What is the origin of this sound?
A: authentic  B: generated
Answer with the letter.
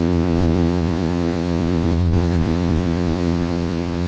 B